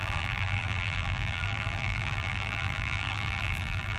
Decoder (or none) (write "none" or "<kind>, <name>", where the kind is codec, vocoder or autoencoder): vocoder, BigVGAN v2